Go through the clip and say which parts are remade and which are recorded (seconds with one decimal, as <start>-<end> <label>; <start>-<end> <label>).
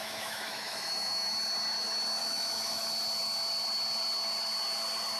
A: 0.0-1.3 remade; 1.3-2.2 recorded; 2.2-2.8 remade; 2.8-5.2 recorded